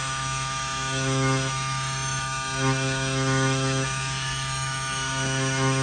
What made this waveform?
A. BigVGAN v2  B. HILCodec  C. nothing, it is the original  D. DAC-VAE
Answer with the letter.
D